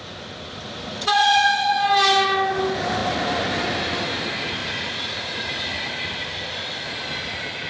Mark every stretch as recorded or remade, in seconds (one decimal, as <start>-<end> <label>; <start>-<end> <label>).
0.0-0.9 recorded; 0.9-1.8 remade; 1.8-4.6 recorded; 4.6-5.5 remade; 5.5-7.7 recorded